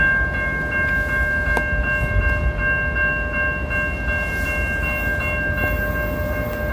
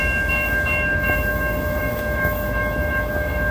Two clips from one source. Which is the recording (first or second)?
first